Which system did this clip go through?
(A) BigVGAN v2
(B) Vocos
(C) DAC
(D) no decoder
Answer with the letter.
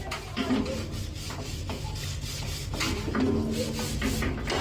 D